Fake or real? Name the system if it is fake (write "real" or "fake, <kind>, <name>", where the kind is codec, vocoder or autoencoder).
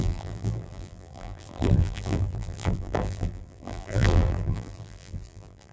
fake, vocoder, BigVGAN v2